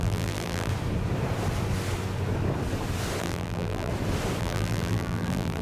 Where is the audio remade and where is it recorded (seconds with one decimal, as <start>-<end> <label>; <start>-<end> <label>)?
0.0-0.7 remade; 0.7-3.2 recorded; 3.2-3.9 remade; 3.9-4.4 recorded; 4.4-5.6 remade